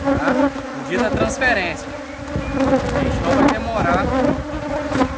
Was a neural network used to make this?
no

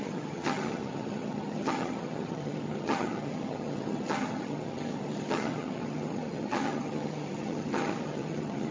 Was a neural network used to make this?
yes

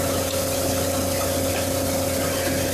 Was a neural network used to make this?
no